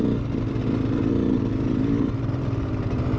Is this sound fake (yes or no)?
no